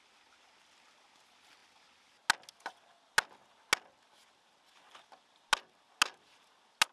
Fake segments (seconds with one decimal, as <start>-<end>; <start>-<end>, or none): none